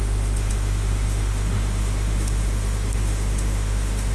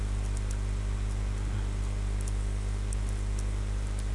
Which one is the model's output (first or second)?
first